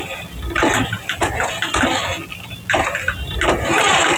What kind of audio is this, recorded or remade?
recorded